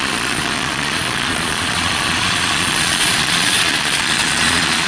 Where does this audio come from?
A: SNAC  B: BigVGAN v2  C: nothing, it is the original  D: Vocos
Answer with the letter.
D